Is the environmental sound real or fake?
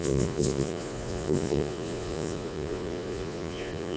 fake